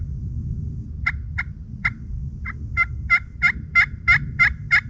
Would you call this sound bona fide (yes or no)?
yes